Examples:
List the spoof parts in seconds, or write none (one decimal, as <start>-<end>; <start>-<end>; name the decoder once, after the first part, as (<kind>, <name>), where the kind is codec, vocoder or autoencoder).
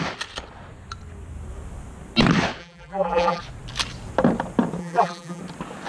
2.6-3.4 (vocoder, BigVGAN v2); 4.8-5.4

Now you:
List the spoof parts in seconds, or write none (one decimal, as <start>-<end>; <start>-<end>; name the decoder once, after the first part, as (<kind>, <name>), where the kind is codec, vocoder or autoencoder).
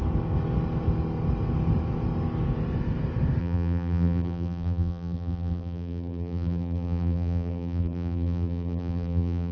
3.4-9.5 (vocoder, BigVGAN v2)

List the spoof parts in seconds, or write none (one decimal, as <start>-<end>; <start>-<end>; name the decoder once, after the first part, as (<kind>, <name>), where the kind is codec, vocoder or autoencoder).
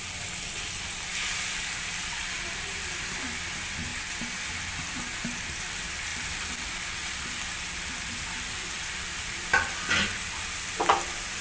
0.0-1.1 (vocoder, BigVGAN v2); 2.1-3.9; 5.4-11.4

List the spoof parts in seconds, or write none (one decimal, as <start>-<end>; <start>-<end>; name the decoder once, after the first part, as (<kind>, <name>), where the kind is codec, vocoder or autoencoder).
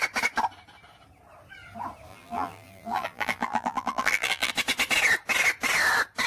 2.1-4.5 (vocoder, BigVGAN v2)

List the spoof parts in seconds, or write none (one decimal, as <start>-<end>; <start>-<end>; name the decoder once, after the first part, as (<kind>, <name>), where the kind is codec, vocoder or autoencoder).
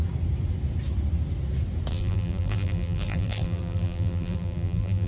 1.9-5.1 (vocoder, BigVGAN v2)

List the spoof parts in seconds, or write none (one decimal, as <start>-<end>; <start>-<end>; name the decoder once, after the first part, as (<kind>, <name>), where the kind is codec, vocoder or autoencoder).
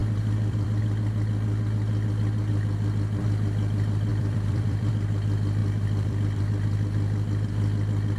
0.0-0.8 (vocoder, BigVGAN v2); 4.1-4.9; 5.6-6.2